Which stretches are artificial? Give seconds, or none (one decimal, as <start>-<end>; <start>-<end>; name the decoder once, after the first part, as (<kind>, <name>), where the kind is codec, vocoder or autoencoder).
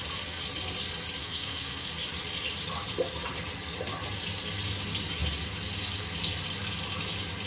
1.2-1.9 (codec, SNAC)